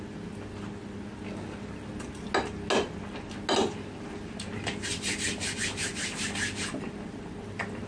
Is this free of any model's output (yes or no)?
yes